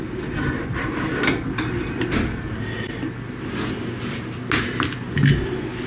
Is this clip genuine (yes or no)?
yes